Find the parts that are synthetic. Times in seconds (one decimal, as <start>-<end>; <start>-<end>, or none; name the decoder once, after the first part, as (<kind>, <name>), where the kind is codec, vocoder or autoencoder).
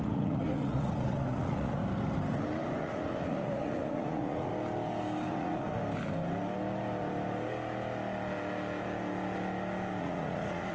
0.0-1.8 (vocoder, Vocos); 2.8-4.5; 5.3-5.8; 10.0-10.7